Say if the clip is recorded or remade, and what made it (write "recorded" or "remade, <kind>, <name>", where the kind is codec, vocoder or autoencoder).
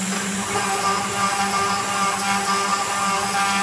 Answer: recorded